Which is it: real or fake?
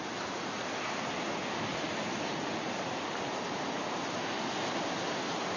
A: real